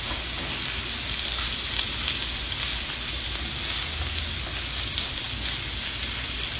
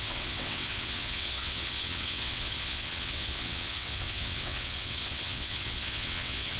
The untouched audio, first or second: first